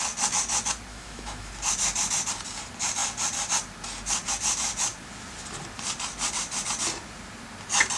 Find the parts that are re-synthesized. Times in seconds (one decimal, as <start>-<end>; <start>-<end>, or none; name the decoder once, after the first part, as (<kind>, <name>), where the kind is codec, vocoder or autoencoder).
0.9-1.5 (autoencoder, DAC-VAE)